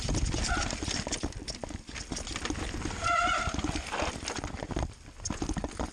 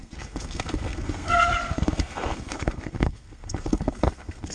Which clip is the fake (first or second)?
second